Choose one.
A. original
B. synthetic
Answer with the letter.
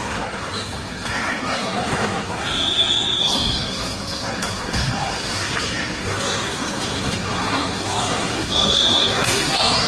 B